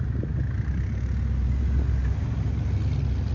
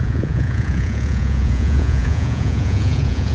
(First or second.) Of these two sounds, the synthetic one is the second